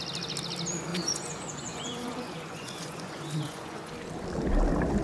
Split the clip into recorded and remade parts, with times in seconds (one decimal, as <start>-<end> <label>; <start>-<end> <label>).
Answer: 0.0-0.9 recorded; 0.9-3.9 remade; 3.9-5.0 recorded